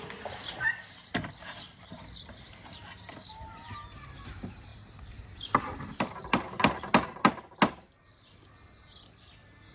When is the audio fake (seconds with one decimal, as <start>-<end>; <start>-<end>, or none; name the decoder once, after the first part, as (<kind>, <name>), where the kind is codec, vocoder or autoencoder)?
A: none